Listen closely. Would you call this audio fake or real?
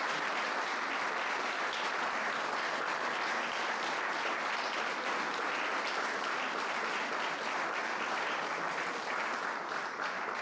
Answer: real